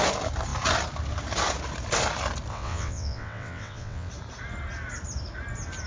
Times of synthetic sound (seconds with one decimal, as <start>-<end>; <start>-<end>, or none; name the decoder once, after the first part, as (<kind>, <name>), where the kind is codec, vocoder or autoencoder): 2.5-4.1 (vocoder, WaveNeXt)